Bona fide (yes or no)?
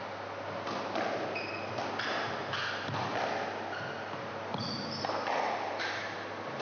yes